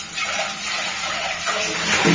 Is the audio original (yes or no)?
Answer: yes